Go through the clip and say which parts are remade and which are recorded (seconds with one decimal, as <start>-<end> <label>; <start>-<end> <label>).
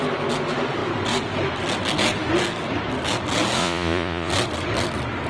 0.0-3.6 recorded; 3.6-4.3 remade; 4.3-5.3 recorded